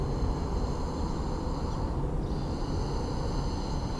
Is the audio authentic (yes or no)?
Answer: yes